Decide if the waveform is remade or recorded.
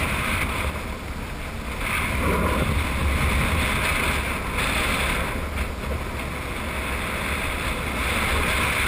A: recorded